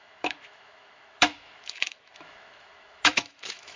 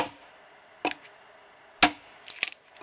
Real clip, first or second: second